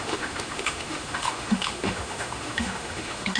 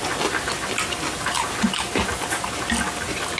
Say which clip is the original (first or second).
second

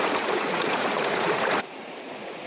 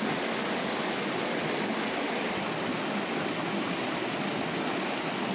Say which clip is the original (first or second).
second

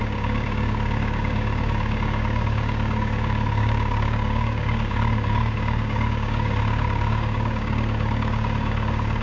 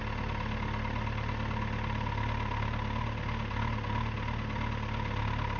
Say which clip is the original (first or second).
second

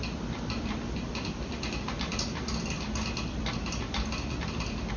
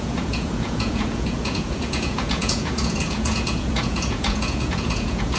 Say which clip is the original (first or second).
first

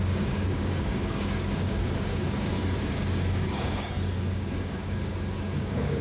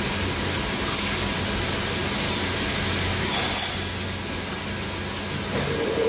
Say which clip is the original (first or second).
second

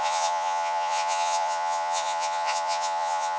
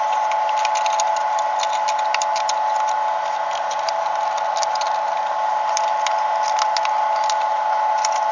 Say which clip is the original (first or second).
second